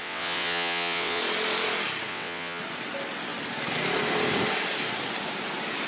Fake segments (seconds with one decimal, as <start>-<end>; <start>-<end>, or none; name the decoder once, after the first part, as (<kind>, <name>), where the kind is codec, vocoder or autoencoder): 0.0-1.2 (vocoder, WaveNeXt); 2.1-2.6